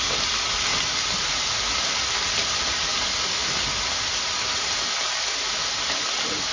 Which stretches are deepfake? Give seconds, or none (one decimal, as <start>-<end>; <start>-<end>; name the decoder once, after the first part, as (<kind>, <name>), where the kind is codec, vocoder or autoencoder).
none